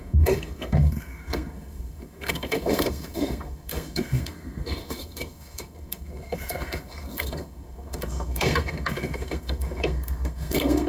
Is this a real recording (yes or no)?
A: no